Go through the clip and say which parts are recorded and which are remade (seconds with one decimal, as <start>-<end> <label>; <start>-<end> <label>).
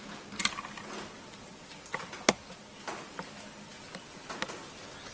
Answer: 0.0-5.1 recorded